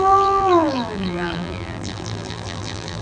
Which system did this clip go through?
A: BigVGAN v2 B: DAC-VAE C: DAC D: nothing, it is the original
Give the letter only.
A